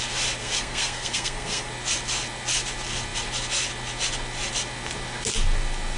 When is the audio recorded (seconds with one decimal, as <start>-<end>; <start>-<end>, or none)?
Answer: 0.0-0.4; 1.7-6.0